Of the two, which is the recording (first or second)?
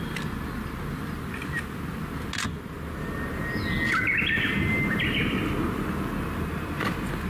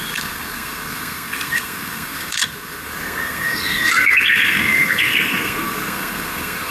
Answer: first